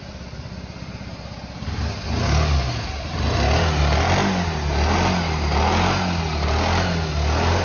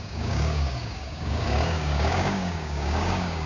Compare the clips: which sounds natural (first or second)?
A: first